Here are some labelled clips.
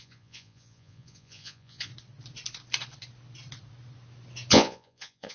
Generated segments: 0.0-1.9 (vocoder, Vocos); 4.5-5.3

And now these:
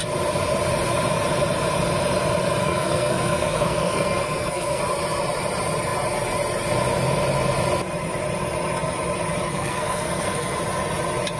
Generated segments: 2.6-4.8 (codec, SNAC); 9.5-10.6

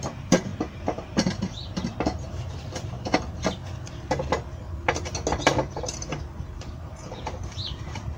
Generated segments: 0.0-3.6 (vocoder, BigVGAN v2); 5.4-8.2